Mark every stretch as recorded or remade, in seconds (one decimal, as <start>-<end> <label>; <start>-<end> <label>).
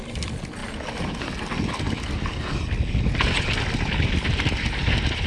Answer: 0.0-5.3 recorded